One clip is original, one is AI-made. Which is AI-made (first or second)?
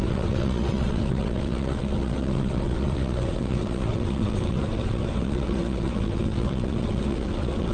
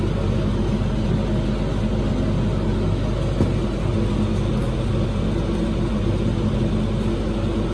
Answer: first